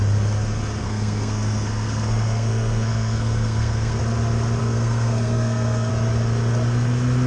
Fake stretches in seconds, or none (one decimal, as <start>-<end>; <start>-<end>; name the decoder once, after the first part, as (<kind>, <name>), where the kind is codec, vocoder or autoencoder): 0.8-4.0 (codec, SNAC); 4.6-5.9